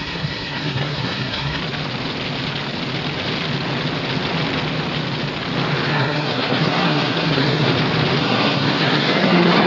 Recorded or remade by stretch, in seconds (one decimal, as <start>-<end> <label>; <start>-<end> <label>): 0.0-1.6 remade; 1.6-5.9 recorded; 5.9-7.7 remade; 7.7-8.2 recorded; 8.2-9.7 remade